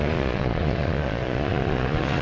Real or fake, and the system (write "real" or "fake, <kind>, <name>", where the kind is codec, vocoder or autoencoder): fake, vocoder, Vocos